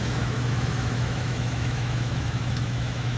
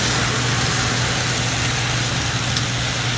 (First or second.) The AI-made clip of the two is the first